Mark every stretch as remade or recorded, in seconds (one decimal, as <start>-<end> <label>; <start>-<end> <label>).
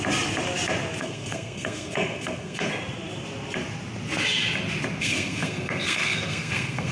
0.0-1.0 recorded; 1.0-2.7 remade; 2.7-5.0 recorded; 5.0-6.9 remade